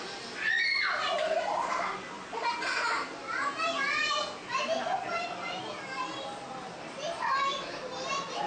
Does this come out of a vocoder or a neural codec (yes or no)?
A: no